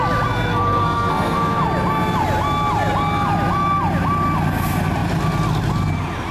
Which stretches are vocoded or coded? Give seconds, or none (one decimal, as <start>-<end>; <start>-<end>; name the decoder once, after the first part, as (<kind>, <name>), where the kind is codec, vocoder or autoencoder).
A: 0.5-1.6 (codec, SNAC)